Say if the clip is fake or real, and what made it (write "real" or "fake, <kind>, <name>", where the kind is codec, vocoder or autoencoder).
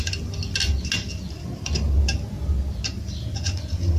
real